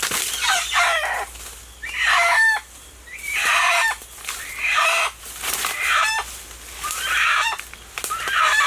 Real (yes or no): yes